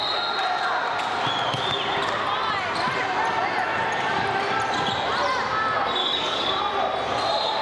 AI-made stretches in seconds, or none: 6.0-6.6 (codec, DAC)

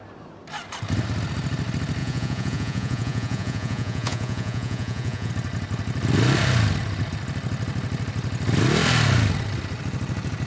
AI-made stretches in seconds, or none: 2.0-5.3 (vocoder, Vocos)

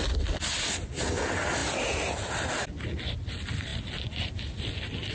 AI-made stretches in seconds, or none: none

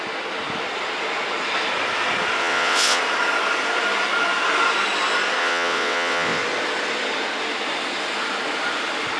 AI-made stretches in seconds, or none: 2.4-3.0 (vocoder, WaveNeXt); 5.4-6.4

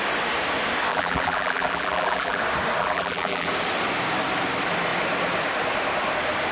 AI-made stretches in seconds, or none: 0.9-2.4 (vocoder, BigVGAN v2); 2.8-3.5